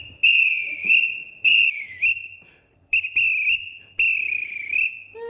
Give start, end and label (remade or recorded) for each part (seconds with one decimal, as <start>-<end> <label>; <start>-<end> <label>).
0.0-0.6 recorded; 0.6-3.8 remade; 3.8-5.3 recorded